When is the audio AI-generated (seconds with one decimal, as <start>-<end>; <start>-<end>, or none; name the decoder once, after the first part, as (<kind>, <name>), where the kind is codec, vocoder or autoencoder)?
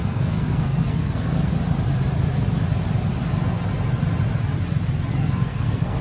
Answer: 0.0-1.5 (codec, SNAC); 5.1-6.0